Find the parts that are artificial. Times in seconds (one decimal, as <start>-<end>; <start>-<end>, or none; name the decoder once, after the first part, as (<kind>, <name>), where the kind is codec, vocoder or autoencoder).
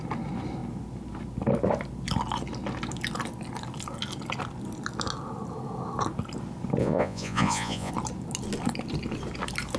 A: 6.8-7.9 (vocoder, Vocos)